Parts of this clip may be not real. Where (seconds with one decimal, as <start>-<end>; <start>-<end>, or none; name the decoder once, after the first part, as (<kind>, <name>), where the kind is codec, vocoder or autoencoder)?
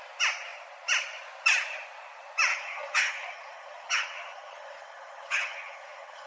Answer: 2.5-6.3 (vocoder, HiFi-GAN)